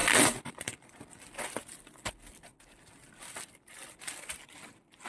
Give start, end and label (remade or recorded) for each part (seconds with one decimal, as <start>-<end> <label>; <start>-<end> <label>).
0.0-5.1 recorded